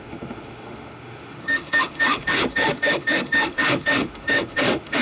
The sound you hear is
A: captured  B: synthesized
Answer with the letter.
B